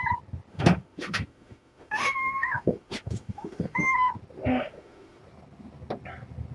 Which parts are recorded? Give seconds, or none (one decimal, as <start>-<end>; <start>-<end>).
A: 0.0-0.5; 4.1-4.5; 5.2-6.5